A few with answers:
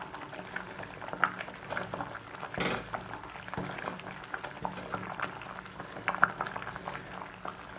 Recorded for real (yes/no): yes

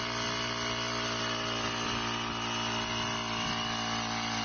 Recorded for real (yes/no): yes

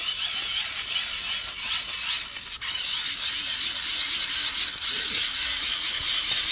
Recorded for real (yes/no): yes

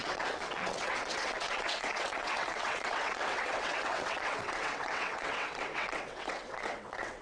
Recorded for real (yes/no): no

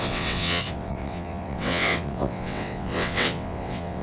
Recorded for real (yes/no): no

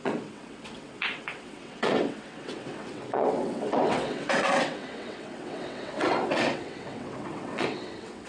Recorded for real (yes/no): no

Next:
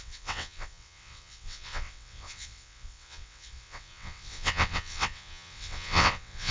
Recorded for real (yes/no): no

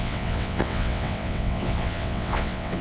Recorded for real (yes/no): no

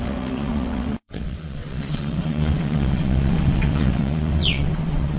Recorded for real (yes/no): no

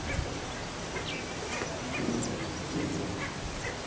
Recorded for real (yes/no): yes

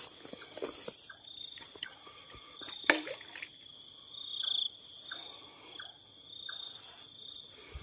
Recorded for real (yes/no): yes